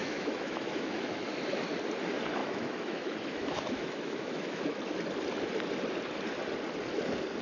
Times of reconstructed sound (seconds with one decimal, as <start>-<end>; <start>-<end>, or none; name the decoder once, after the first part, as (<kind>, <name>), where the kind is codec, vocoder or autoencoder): 0.0-1.4 (autoencoder, DAC-VAE); 2.4-4.8